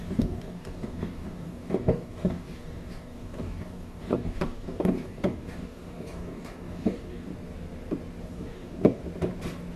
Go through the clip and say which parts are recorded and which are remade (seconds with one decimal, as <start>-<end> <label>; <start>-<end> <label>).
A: 0.0-7.3 remade; 7.3-8.2 recorded; 8.2-9.0 remade; 9.0-9.8 recorded